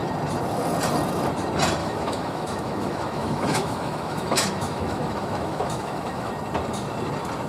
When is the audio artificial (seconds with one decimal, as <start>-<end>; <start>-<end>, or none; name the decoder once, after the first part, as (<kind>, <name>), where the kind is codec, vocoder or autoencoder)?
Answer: 1.8-6.3 (autoencoder, DAC-VAE)